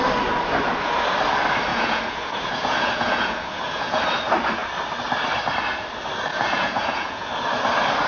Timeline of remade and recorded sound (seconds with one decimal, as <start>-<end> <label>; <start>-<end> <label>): 0.0-1.7 recorded; 1.7-4.0 remade; 4.0-6.3 recorded; 6.3-7.3 remade; 7.3-8.1 recorded